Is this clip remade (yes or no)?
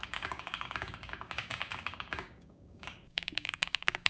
yes